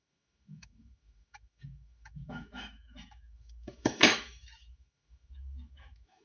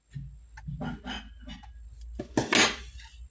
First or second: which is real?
second